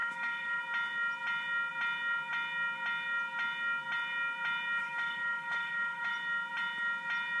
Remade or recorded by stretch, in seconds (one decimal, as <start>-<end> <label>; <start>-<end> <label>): 0.0-0.6 remade; 0.6-4.8 recorded; 4.8-6.1 remade; 6.1-7.4 recorded

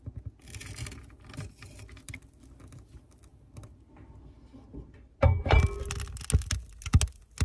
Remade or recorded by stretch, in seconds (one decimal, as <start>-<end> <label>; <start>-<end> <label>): 0.0-7.4 recorded